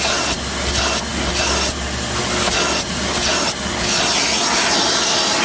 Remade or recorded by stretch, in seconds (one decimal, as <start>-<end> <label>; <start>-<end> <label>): 0.0-5.4 recorded